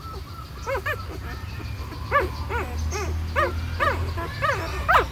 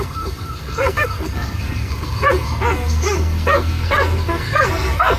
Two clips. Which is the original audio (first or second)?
first